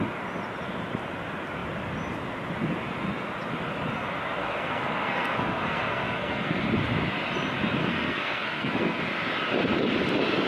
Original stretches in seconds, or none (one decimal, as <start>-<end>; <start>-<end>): 0.0-4.4; 6.6-7.8; 9.0-10.5